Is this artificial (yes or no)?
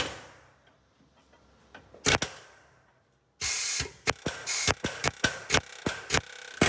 no